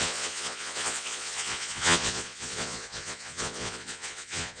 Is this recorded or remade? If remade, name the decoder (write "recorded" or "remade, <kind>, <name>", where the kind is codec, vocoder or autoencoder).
remade, vocoder, Vocos